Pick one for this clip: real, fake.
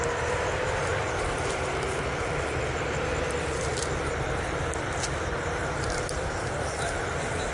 fake